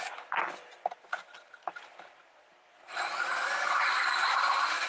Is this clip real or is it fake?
real